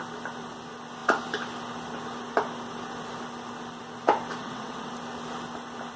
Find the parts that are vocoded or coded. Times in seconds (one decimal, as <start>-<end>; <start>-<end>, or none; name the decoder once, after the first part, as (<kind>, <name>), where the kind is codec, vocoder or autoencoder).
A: 4.4-4.9 (vocoder, WaveNeXt)